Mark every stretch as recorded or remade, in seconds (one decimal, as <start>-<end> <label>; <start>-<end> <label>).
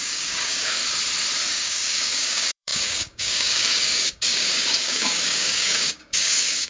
0.0-0.8 remade; 0.8-1.5 recorded; 1.5-6.7 remade